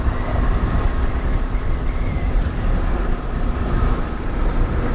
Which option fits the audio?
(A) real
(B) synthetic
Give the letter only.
A